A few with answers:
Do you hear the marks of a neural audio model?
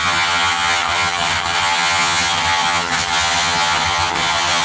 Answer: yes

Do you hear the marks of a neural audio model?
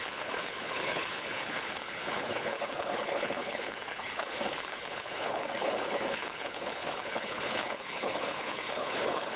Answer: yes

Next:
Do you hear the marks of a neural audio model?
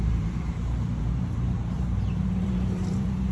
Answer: yes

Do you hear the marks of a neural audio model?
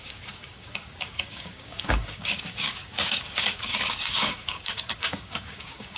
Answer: yes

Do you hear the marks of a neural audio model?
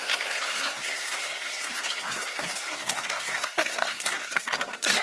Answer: yes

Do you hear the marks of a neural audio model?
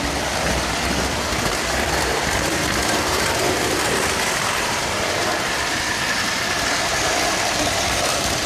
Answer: no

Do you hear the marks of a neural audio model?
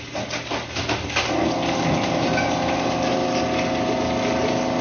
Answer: no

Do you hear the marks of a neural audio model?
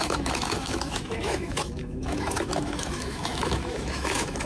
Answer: yes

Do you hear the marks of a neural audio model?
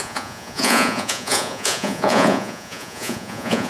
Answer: yes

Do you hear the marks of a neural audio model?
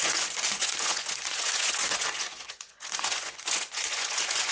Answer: yes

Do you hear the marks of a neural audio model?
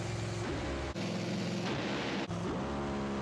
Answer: no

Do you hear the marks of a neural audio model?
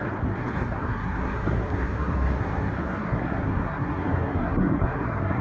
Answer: yes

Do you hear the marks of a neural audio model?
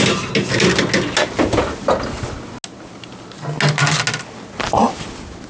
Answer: no